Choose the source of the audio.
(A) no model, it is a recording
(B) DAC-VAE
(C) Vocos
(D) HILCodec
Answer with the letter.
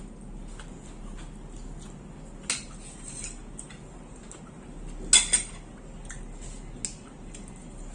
A